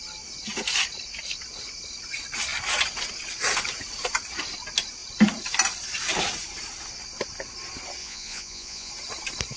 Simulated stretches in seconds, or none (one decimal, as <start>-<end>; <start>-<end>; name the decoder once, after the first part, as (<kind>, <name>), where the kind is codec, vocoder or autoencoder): 8.0-8.9 (vocoder, Vocos)